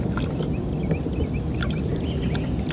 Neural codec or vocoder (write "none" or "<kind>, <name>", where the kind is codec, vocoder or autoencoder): none